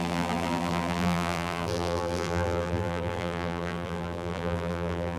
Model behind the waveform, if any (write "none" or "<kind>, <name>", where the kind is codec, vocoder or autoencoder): vocoder, BigVGAN v2